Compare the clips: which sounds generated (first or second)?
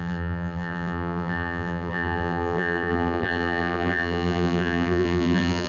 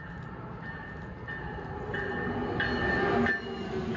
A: first